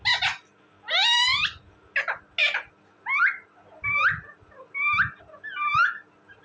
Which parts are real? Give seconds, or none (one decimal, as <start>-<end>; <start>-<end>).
0.0-6.4